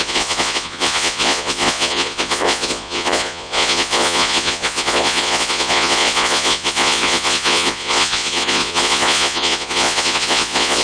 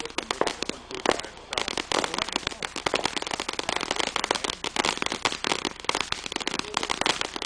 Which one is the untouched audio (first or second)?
second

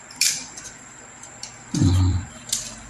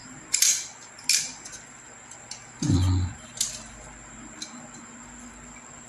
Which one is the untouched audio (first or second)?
second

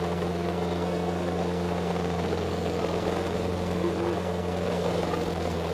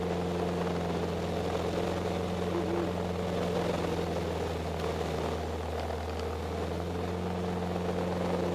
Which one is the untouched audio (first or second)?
second